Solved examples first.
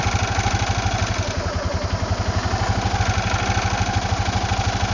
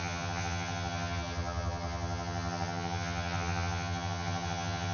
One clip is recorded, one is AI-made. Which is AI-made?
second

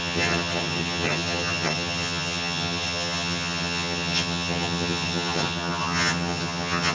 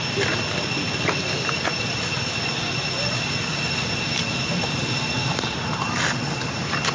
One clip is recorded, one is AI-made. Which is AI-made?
first